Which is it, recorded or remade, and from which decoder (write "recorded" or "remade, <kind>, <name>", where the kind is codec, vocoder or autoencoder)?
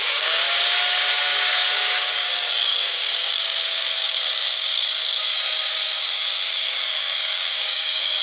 remade, codec, DAC